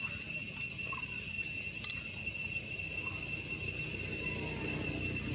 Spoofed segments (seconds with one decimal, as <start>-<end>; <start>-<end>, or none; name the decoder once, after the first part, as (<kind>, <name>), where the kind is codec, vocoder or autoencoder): none